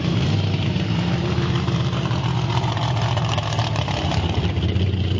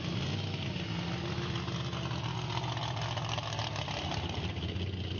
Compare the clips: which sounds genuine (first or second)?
second